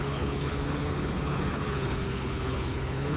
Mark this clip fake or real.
fake